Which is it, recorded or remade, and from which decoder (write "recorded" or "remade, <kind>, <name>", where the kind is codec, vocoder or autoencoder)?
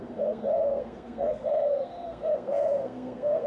remade, codec, SNAC